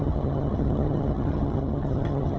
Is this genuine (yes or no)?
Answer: no